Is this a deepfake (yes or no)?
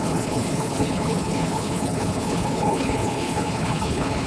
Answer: yes